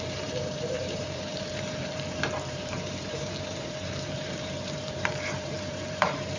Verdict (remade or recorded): remade